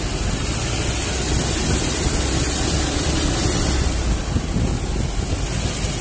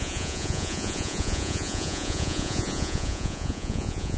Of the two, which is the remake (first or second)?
second